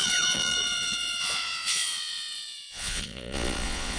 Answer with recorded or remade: remade